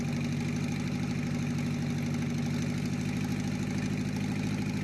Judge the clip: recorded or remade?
recorded